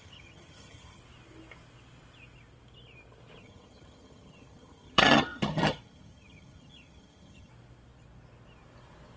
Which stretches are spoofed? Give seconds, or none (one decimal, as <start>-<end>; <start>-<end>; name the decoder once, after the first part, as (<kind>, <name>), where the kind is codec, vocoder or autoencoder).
0.0-1.0 (vocoder, HiFi-GAN); 3.4-7.5